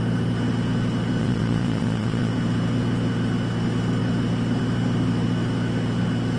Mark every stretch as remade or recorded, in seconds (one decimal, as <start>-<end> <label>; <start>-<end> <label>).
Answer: 0.0-1.2 recorded; 1.2-2.3 remade; 2.3-6.4 recorded